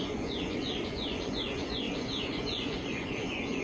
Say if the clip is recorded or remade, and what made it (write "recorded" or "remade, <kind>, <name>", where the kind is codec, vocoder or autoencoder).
remade, vocoder, Vocos